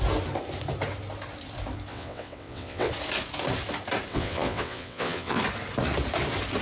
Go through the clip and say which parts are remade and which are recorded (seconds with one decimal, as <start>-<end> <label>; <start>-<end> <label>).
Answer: 0.0-1.9 recorded; 1.9-2.9 remade; 2.9-4.1 recorded; 4.1-5.4 remade; 5.4-6.6 recorded